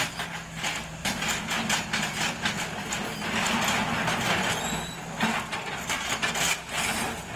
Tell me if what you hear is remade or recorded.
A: recorded